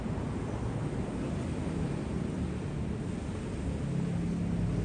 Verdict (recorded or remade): recorded